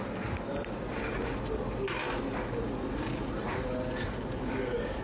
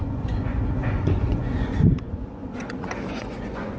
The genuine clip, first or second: first